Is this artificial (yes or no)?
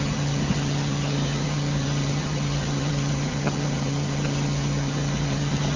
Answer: yes